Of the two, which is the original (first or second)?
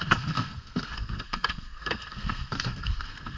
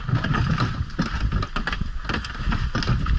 second